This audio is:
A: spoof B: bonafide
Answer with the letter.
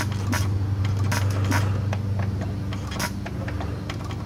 B